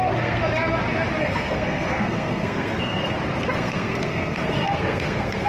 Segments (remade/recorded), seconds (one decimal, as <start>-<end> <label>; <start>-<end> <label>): 0.0-0.4 remade; 0.4-1.2 recorded; 1.2-3.0 remade; 3.0-3.5 recorded; 3.5-5.5 remade